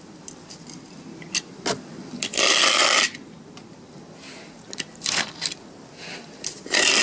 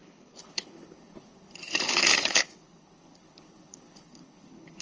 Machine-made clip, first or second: second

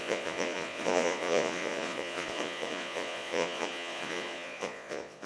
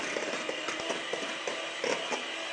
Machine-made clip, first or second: first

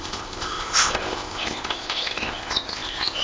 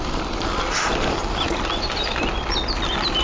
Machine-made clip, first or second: first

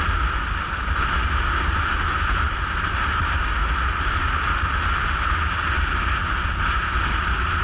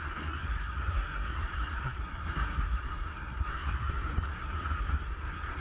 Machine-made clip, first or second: second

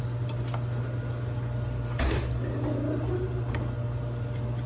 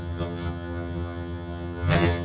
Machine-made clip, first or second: second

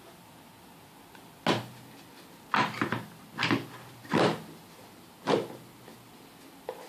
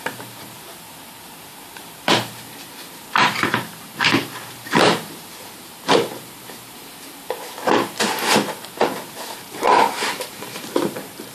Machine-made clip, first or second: second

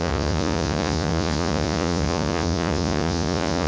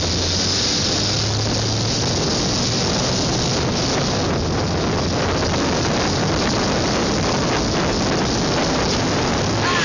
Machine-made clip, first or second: first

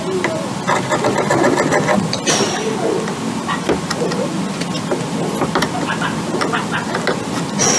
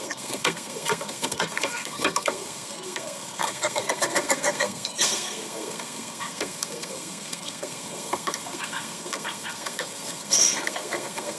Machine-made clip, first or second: second